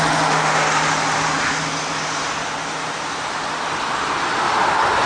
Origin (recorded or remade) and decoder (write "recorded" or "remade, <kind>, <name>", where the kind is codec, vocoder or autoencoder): recorded